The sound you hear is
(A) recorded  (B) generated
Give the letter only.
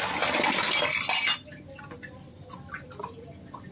A